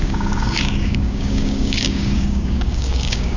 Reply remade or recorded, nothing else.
remade